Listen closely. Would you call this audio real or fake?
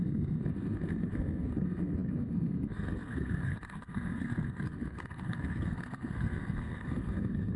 fake